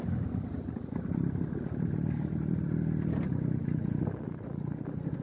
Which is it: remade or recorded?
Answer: recorded